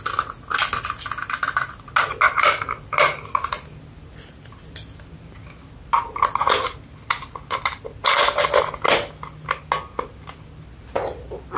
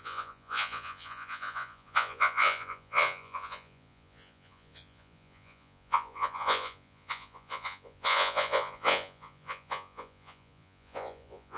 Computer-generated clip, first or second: second